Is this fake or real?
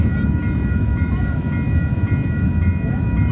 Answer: real